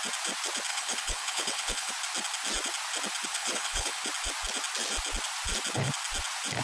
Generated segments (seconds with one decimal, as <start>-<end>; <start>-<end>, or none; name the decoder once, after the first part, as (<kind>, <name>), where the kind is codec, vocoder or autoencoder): 0.7-1.9 (codec, HILCodec); 3.3-4.0